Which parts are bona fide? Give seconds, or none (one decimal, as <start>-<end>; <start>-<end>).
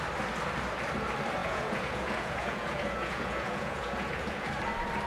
0.0-1.4; 4.5-5.1